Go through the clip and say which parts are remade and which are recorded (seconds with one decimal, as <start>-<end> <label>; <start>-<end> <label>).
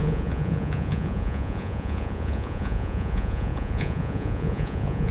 0.0-5.1 remade